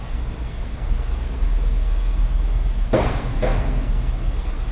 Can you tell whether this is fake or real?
fake